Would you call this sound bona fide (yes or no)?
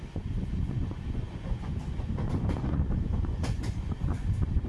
no